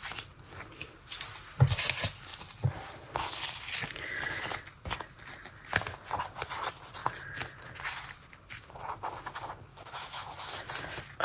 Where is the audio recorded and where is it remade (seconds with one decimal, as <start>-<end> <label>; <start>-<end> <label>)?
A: 0.0-9.7 recorded; 9.7-10.7 remade; 10.7-11.2 recorded